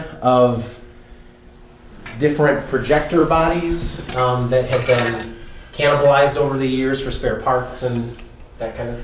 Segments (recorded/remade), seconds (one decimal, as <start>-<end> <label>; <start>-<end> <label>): 0.0-2.1 recorded; 2.1-2.7 remade; 2.7-7.7 recorded; 7.7-8.4 remade; 8.4-9.0 recorded

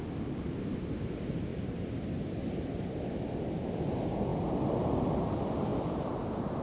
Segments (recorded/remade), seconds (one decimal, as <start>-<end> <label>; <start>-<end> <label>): 0.0-5.7 recorded; 5.7-6.6 remade